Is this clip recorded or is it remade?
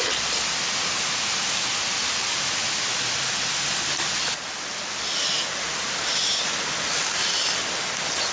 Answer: recorded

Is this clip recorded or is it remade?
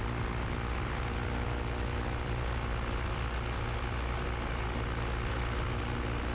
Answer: recorded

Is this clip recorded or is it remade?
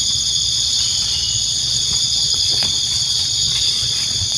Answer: remade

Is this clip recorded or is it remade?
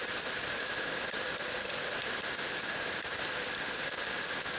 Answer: recorded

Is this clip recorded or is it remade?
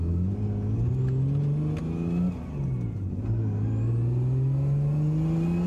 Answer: recorded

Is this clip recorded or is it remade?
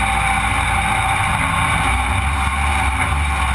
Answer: recorded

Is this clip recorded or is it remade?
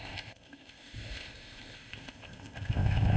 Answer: remade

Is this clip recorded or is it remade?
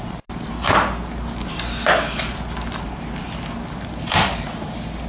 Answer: recorded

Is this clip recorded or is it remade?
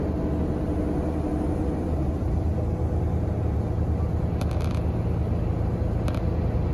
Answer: recorded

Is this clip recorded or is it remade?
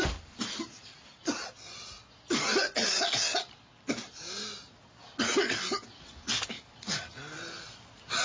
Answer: recorded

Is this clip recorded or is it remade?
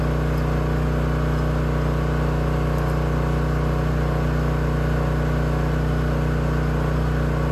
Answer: recorded